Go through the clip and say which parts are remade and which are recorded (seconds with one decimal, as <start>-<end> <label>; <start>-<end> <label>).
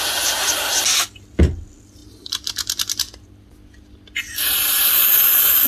0.0-5.7 recorded